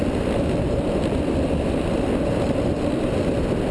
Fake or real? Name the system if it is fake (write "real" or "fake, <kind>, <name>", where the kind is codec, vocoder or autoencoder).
real